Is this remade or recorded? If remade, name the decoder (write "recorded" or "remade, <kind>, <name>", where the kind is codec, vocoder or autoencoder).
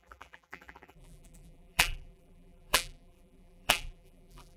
remade, vocoder, BigVGAN v2